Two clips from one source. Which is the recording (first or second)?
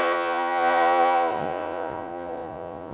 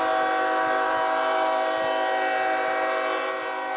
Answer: second